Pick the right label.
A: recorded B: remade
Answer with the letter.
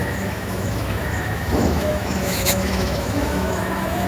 B